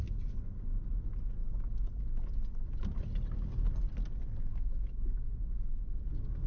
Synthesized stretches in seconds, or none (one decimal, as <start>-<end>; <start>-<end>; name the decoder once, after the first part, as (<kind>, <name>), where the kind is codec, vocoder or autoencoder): 4.5-5.8 (autoencoder, DAC-VAE)